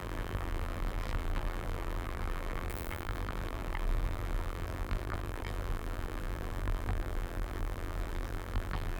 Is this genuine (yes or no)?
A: no